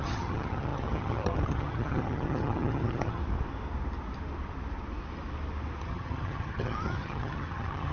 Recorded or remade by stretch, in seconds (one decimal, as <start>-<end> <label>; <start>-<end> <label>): 0.0-3.2 remade; 3.2-5.8 recorded; 5.8-7.9 remade